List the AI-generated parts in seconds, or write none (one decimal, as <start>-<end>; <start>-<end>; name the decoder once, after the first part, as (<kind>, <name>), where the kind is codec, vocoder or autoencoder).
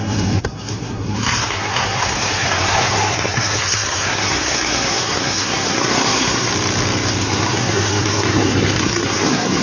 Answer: 0.0-6.5 (codec, SNAC); 7.2-9.6